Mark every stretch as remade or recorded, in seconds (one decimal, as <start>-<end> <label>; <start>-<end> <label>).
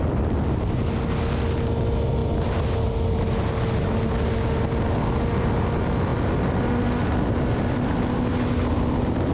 0.0-9.3 recorded